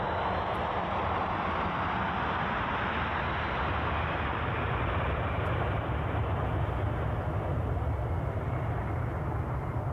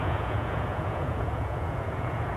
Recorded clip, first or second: first